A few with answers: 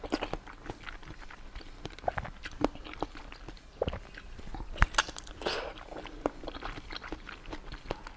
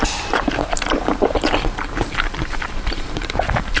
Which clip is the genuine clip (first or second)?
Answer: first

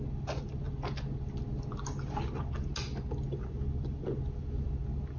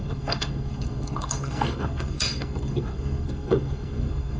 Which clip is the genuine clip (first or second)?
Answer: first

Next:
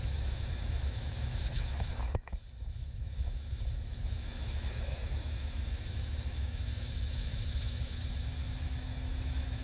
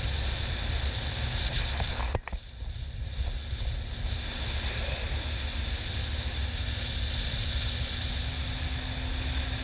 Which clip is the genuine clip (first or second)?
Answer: second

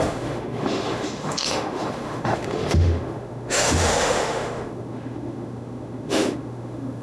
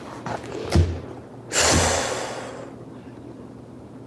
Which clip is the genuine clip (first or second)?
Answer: second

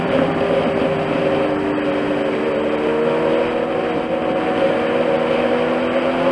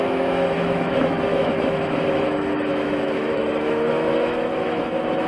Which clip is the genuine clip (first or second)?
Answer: first